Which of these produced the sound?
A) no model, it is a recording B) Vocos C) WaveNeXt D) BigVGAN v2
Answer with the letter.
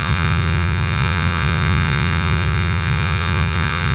B